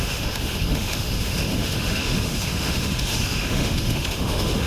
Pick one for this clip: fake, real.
fake